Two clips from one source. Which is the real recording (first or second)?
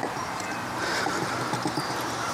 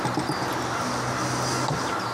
second